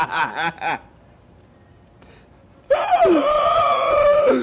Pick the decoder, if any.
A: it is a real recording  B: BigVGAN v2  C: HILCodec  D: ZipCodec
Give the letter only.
B